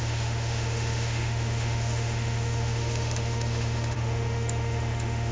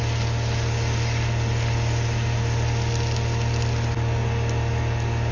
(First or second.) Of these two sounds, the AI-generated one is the first